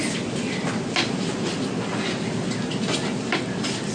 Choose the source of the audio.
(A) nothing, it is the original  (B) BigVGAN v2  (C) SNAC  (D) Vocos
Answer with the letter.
A